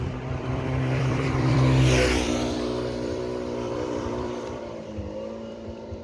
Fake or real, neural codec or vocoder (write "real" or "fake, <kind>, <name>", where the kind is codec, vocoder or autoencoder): fake, vocoder, BigVGAN v2